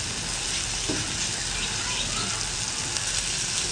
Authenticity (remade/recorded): recorded